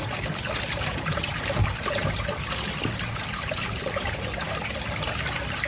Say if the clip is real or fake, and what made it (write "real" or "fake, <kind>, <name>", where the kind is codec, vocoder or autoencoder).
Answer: real